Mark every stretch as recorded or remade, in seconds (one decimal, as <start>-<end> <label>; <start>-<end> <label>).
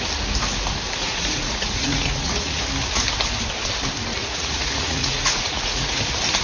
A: 0.0-1.0 recorded; 1.0-2.6 remade; 2.6-4.2 recorded; 4.2-6.0 remade; 6.0-6.4 recorded